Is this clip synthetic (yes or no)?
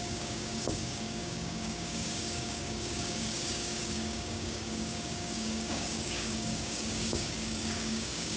yes